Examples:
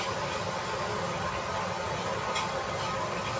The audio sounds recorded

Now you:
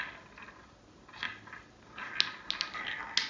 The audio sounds recorded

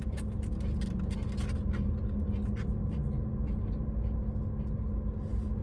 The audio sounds recorded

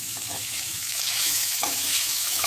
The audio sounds remade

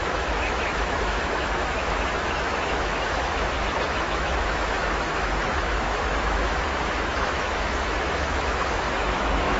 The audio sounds remade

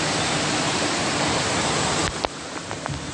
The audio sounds recorded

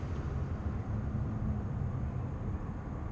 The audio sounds recorded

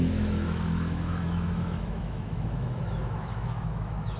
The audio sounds remade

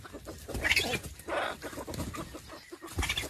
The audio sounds recorded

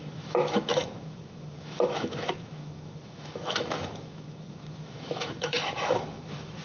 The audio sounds remade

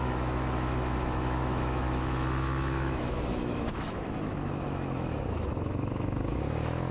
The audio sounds remade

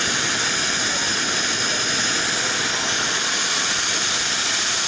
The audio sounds recorded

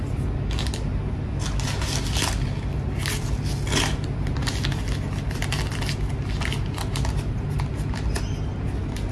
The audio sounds recorded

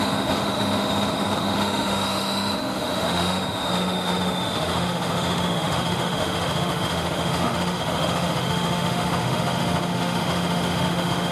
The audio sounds remade